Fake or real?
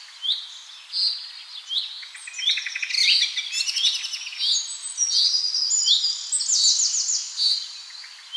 real